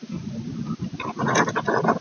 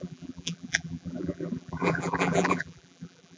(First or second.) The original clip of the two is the first